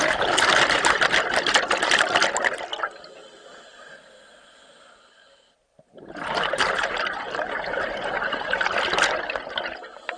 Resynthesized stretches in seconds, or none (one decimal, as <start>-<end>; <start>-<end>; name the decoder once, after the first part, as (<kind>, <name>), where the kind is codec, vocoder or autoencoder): none